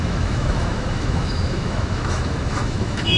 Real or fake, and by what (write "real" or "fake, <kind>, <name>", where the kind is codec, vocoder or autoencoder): fake, autoencoder, DAC-VAE